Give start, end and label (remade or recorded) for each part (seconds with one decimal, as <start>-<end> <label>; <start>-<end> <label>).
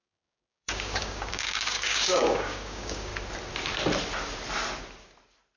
0.0-3.1 remade; 3.1-5.6 recorded